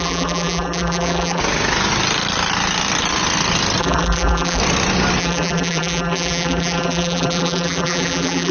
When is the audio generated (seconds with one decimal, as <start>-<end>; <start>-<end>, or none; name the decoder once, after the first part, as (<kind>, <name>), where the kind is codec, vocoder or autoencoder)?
0.0-1.4 (vocoder, BigVGAN v2); 3.8-4.6; 5.2-8.5